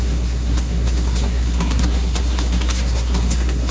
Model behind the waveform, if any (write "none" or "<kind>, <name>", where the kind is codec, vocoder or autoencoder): codec, SNAC